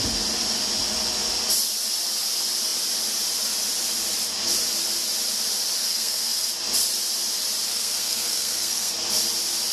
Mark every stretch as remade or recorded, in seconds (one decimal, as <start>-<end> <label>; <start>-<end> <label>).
0.0-5.9 recorded; 5.9-6.5 remade; 6.5-7.7 recorded; 7.7-8.9 remade; 8.9-9.7 recorded